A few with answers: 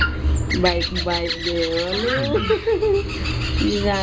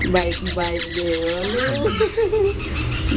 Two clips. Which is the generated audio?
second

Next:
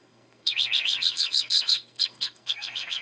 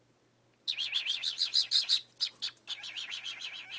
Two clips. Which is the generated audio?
first